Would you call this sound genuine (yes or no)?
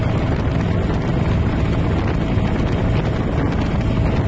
yes